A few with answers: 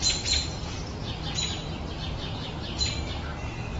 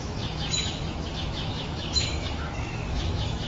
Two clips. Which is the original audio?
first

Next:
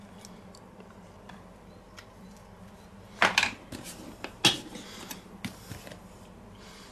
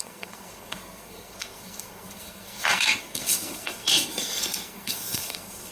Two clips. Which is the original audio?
first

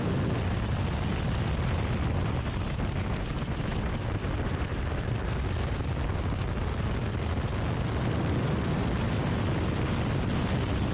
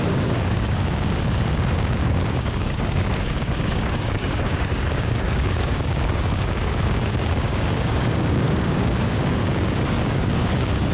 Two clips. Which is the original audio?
first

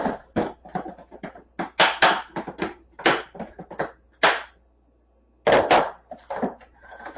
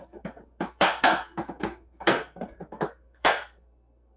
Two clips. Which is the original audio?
first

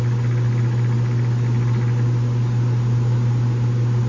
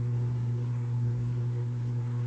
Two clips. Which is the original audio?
first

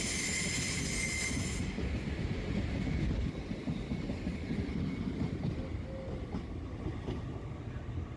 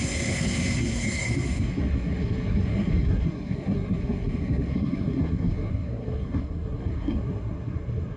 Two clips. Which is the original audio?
first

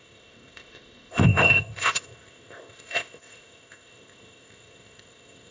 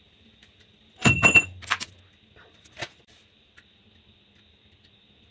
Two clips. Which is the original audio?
second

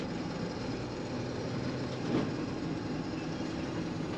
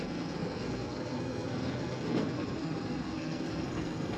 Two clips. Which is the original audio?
first